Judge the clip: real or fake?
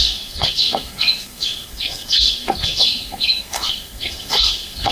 fake